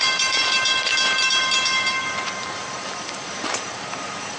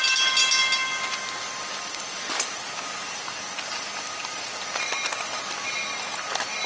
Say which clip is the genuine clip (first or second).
second